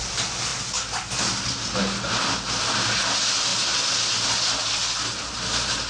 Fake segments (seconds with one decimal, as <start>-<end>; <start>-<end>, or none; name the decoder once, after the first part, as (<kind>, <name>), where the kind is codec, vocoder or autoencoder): none